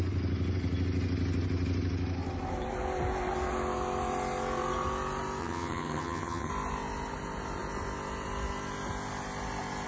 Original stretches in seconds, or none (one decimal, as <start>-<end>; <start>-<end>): 0.0-5.4; 6.5-9.9